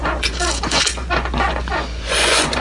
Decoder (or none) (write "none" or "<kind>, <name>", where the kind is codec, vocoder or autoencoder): vocoder, Vocos